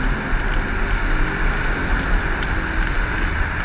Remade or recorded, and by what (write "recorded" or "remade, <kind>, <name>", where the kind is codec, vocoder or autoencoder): recorded